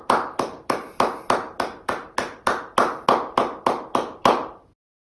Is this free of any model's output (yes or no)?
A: yes